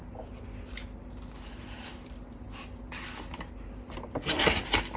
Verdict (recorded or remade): recorded